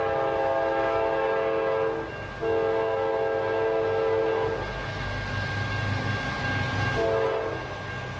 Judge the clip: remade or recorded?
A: recorded